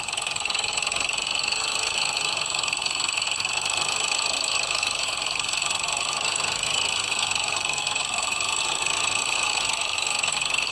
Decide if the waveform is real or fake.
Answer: fake